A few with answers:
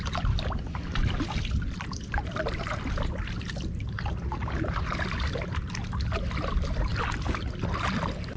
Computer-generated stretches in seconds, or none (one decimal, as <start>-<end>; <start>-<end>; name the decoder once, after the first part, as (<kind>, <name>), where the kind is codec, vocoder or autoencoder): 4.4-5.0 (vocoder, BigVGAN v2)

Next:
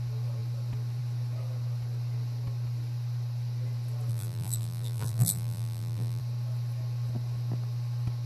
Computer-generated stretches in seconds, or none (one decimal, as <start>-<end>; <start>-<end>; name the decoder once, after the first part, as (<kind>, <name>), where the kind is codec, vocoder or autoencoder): 4.1-6.2 (vocoder, BigVGAN v2)

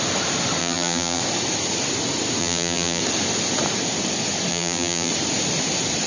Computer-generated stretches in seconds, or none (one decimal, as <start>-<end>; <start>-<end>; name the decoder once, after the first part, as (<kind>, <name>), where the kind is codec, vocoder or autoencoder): 0.6-1.2 (vocoder, BigVGAN v2); 2.4-3.0; 4.5-5.1

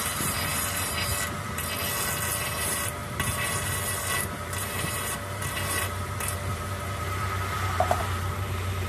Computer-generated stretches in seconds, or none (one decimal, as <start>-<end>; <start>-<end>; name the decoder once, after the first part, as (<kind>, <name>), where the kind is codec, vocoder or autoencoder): 0.0-1.1 (vocoder, BigVGAN v2); 2.4-8.9

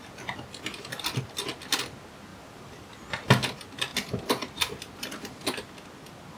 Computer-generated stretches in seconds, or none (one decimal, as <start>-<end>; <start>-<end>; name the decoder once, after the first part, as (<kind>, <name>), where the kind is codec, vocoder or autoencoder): 2.3-2.8 (vocoder, BigVGAN v2)

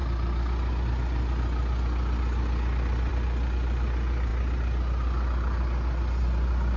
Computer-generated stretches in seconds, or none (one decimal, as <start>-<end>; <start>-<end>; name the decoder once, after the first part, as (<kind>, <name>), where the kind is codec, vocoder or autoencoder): none

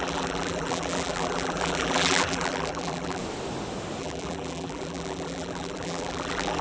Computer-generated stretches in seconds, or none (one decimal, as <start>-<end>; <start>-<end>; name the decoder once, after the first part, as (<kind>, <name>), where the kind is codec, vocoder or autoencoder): 0.0-3.2 (vocoder, BigVGAN v2); 4.0-6.6

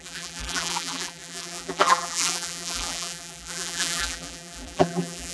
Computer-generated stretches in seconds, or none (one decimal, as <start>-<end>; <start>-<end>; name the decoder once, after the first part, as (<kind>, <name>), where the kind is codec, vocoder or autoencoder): 0.0-5.3 (vocoder, BigVGAN v2)